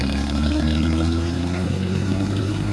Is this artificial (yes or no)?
yes